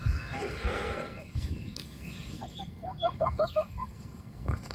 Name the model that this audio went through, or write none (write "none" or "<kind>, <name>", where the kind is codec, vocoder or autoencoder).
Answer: codec, SNAC